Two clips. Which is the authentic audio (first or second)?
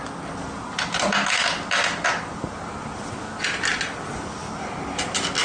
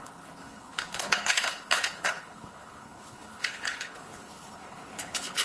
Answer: first